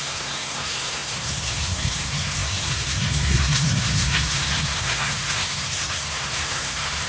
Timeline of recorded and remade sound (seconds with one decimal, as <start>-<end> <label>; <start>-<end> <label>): 0.0-7.1 remade

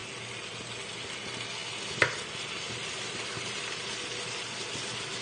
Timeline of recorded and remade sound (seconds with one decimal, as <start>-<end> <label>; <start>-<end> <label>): 0.0-5.2 recorded

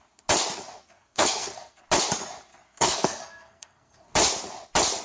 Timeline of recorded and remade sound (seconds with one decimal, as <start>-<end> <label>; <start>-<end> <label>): 0.0-0.8 recorded; 0.8-1.8 remade; 1.8-2.5 recorded; 2.5-4.1 remade; 4.1-5.0 recorded

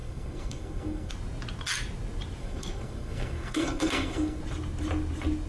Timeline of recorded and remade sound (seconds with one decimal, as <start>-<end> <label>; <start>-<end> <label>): 0.0-1.1 remade; 1.1-2.4 recorded; 2.4-4.4 remade; 4.4-5.5 recorded

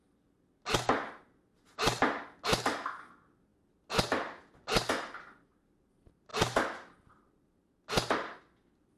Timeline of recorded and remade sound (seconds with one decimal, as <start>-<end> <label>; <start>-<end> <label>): 0.0-9.0 recorded